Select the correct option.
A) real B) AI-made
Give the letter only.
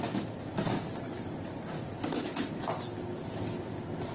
A